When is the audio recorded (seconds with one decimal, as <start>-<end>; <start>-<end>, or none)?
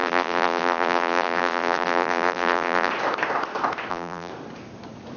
2.9-3.9; 4.3-5.2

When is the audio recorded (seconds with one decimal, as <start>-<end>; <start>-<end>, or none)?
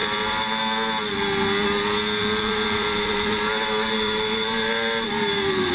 0.6-2.2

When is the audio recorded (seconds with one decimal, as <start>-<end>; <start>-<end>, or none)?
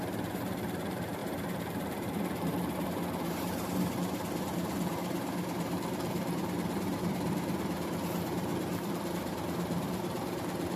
1.2-1.7; 8.5-9.1